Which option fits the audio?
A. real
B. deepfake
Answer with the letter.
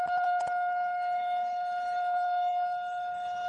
B